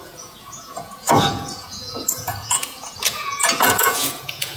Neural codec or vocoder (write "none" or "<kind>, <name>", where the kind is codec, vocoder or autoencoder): vocoder, Vocos